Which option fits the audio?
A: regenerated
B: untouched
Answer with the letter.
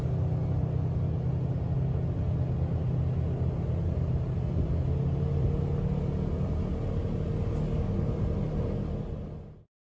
B